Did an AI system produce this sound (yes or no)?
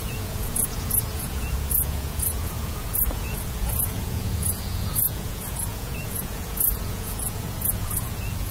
yes